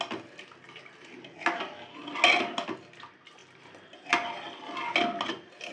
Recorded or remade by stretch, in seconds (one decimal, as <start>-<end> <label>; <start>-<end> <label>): 0.0-5.7 recorded